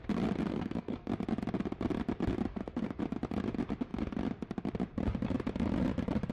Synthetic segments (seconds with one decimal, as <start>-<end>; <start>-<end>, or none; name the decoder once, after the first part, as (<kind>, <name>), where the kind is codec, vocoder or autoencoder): 0.5-1.1 (codec, SNAC); 2.5-3.0